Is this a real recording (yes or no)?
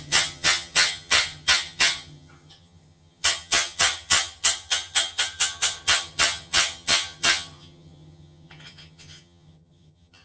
no